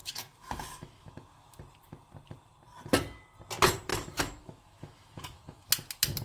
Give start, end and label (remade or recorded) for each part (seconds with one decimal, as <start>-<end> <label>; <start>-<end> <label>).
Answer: 0.0-1.6 remade; 1.6-3.9 recorded; 3.9-5.7 remade; 5.7-6.2 recorded